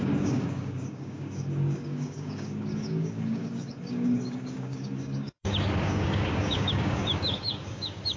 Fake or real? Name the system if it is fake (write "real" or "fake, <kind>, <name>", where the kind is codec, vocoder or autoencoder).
fake, codec, DAC